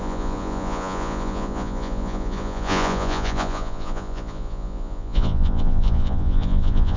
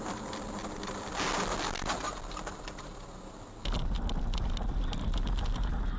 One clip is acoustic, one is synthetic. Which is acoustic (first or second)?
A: second